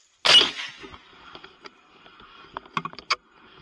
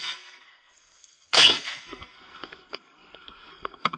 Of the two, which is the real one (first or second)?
first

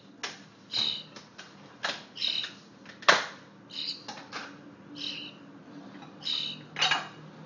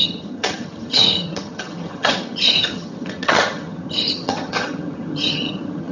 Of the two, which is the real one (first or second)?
first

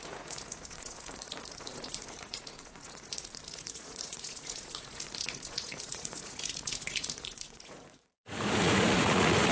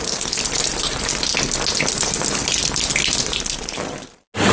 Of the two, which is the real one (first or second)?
second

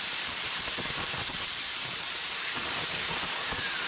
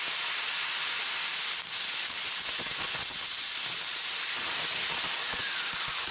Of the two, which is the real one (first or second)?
second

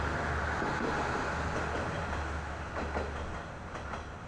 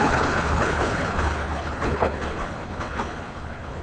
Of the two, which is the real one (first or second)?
first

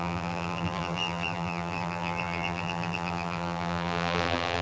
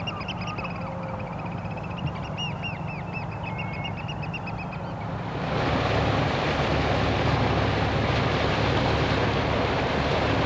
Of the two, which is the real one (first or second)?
second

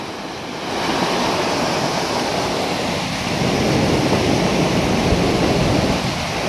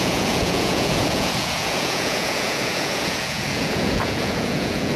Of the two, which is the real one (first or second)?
first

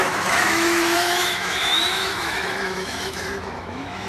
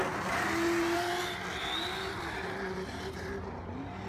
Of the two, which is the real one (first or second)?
second